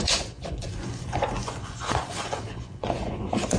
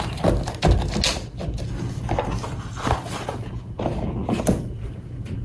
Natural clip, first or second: second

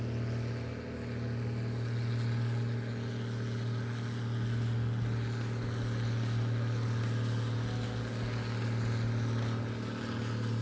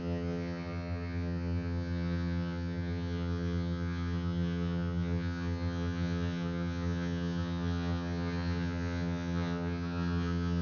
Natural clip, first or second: first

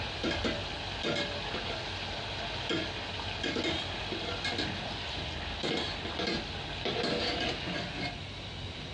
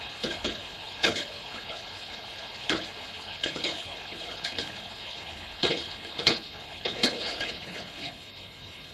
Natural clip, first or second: first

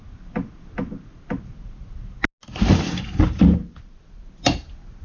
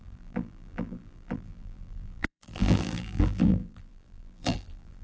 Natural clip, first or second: first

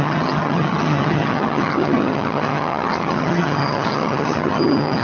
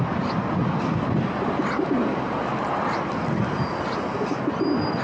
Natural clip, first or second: second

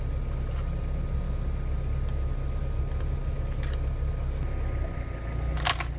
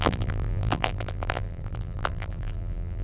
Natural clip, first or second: first